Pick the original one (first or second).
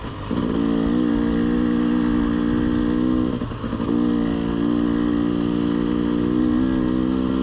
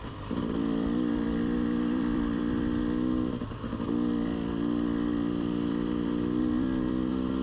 first